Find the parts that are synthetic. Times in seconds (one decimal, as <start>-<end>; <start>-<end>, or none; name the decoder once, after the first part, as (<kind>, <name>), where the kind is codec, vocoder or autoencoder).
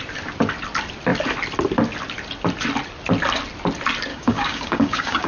4.1-5.3 (codec, DAC)